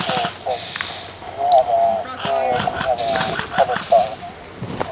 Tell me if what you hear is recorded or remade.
recorded